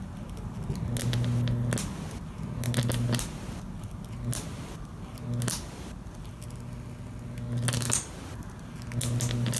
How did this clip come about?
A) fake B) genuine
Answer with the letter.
B